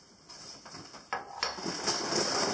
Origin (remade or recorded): recorded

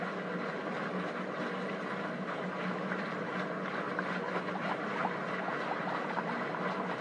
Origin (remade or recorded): recorded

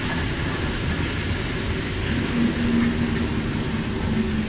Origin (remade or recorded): recorded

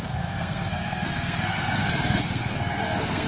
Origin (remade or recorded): remade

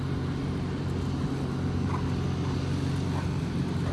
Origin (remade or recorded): recorded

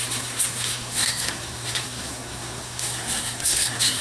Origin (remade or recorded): remade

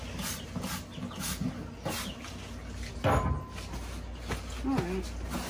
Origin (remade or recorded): recorded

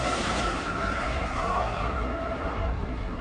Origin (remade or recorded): remade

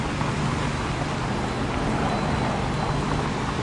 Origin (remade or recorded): recorded